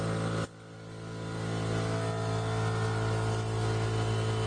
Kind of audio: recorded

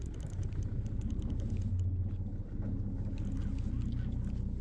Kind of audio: recorded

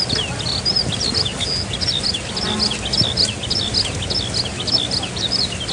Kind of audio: recorded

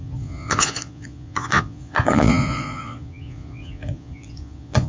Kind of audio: remade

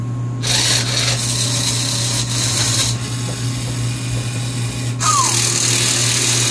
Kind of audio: recorded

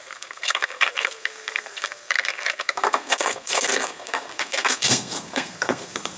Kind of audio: remade